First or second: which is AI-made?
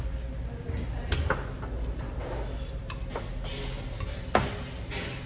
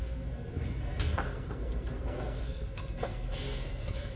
second